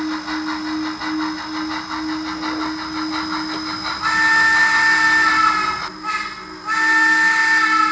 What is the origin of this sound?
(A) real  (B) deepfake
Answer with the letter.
A